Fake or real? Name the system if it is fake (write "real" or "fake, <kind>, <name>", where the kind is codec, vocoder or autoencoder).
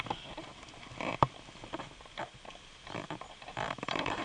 real